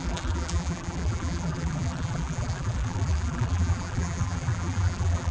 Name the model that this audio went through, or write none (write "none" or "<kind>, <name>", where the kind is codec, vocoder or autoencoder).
vocoder, BigVGAN v2